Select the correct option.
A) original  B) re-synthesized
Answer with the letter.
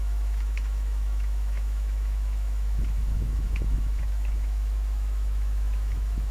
B